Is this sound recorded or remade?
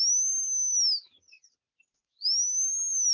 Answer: recorded